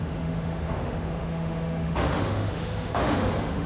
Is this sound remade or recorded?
remade